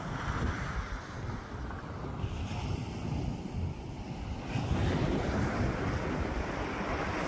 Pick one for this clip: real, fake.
real